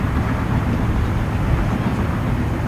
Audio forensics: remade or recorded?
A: recorded